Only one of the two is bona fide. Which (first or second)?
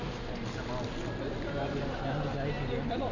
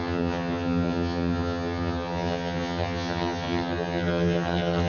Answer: first